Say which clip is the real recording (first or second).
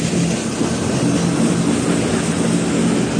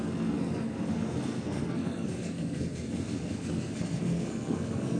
first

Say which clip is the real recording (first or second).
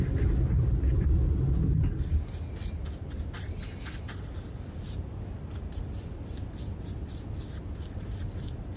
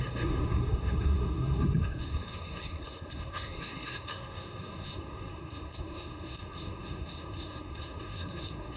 first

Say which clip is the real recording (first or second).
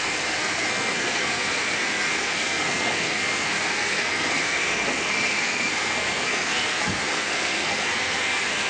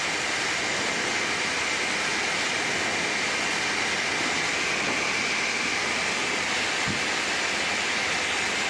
second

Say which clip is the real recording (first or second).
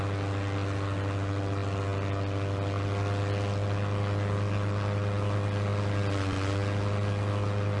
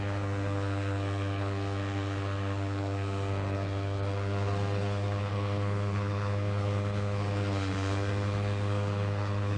first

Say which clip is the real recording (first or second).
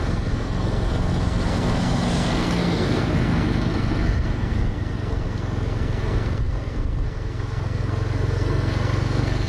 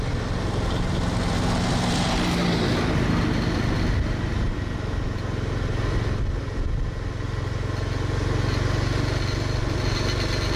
second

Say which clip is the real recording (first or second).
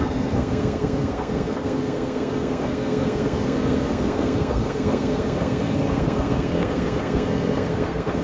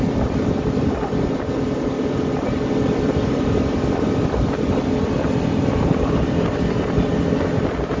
second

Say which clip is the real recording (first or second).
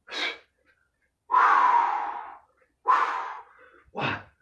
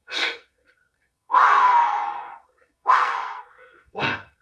first